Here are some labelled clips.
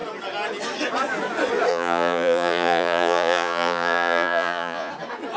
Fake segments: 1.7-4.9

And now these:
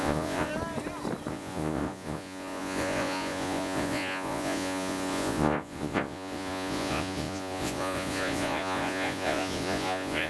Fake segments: 0.0-0.5; 1.3-10.3

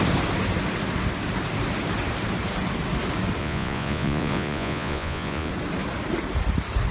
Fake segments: 3.4-5.5

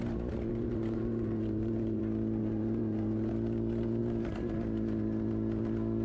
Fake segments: 0.5-2.0; 2.4-3.3

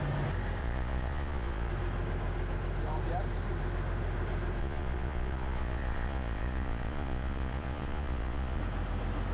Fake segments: 0.6-1.7; 4.6-8.6

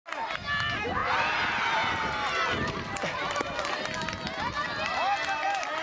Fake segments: none

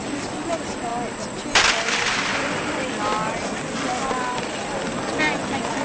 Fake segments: none

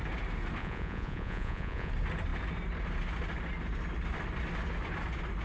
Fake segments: 0.6-1.9